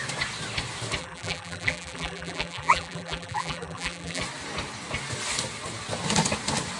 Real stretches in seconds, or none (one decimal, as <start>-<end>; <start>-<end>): 0.0-1.0; 4.2-6.8